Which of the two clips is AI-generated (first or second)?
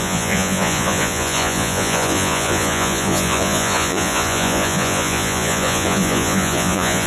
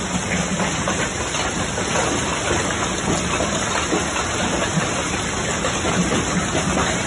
first